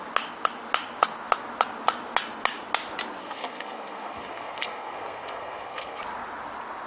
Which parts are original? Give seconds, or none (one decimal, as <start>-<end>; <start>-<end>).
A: 0.0-3.2; 6.0-6.9